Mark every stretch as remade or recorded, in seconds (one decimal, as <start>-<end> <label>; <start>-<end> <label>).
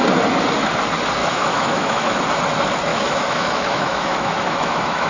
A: 0.0-1.2 recorded; 1.2-2.2 remade; 2.2-2.9 recorded; 2.9-5.1 remade